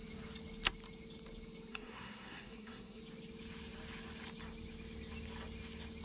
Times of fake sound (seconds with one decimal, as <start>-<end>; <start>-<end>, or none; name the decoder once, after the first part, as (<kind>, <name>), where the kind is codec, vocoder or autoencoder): 1.7-3.0 (codec, SNAC)